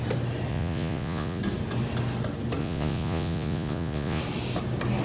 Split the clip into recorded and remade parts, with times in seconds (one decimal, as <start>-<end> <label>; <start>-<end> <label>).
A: 0.0-0.5 recorded; 0.5-1.4 remade; 1.4-2.6 recorded; 2.6-4.2 remade; 4.2-5.0 recorded